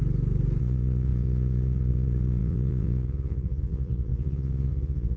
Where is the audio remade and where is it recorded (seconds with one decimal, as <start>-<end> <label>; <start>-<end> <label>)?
0.0-0.6 recorded; 0.6-5.2 remade